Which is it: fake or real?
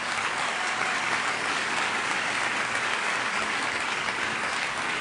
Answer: fake